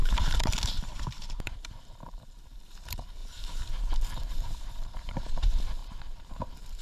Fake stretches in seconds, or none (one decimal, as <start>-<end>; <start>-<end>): 0.0-6.8